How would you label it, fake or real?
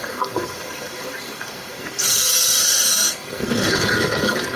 fake